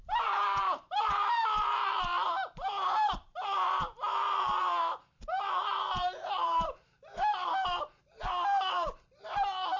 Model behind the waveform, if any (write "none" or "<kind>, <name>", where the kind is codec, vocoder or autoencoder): vocoder, BigVGAN v2